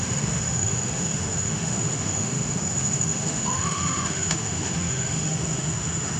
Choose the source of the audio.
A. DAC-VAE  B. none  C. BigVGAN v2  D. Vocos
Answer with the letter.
A